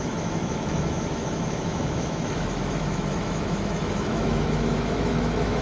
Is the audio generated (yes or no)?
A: yes